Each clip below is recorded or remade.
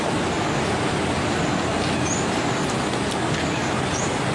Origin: recorded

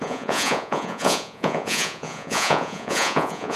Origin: remade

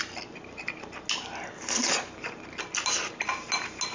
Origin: recorded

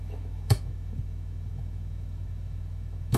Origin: remade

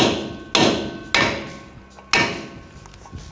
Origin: recorded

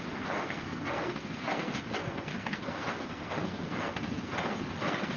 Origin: remade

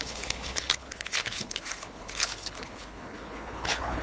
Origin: remade